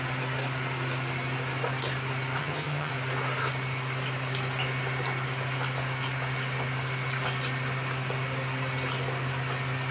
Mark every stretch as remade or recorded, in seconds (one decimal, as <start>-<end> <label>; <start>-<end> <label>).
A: 0.0-2.4 recorded; 2.4-2.9 remade; 2.9-9.9 recorded